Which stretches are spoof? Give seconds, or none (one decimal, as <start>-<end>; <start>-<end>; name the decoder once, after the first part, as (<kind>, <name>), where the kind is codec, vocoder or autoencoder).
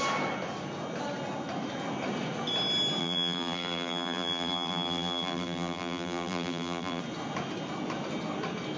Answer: 3.0-7.0 (vocoder, BigVGAN v2)